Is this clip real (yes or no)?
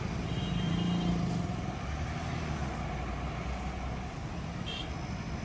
yes